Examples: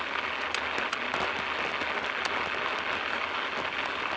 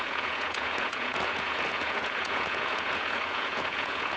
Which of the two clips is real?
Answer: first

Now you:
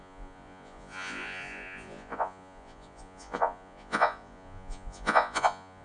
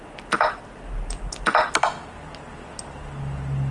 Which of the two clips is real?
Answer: second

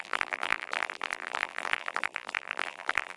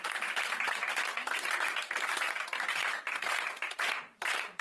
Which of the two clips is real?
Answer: second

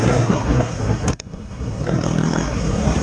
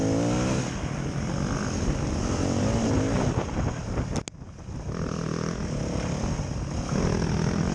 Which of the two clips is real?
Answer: second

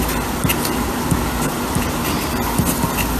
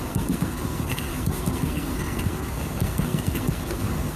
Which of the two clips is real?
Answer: first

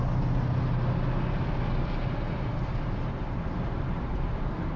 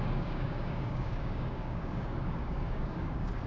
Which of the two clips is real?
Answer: first